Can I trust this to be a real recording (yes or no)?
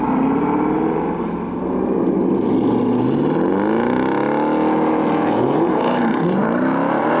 yes